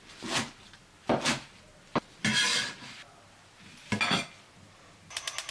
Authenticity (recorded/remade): recorded